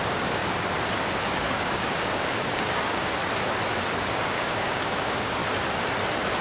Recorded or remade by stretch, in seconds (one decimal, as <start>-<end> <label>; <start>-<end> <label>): 0.0-0.4 remade; 0.4-1.3 recorded; 1.3-3.2 remade; 3.2-4.1 recorded; 4.1-5.4 remade; 5.4-6.4 recorded